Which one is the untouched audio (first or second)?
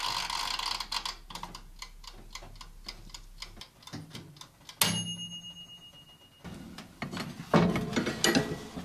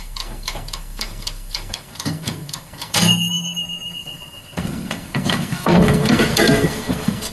first